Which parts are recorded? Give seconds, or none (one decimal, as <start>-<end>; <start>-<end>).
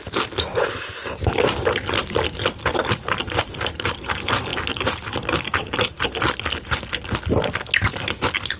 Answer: 0.0-1.0; 2.0-4.5; 6.5-8.6